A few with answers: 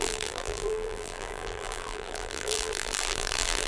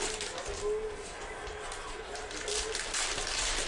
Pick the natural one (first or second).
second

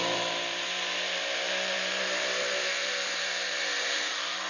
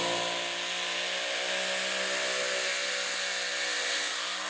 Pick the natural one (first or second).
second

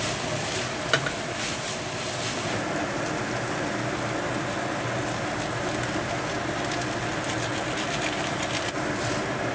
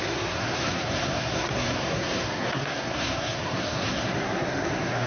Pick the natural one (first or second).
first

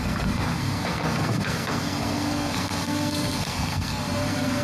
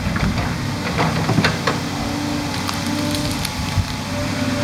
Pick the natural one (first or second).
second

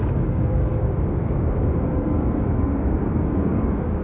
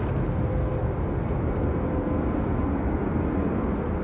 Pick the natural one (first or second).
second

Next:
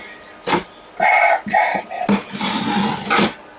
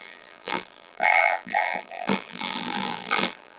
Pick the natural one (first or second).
first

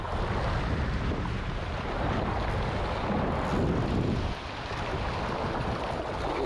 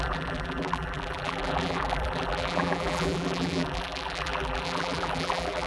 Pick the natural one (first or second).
first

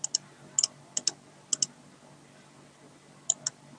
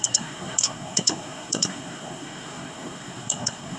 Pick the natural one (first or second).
first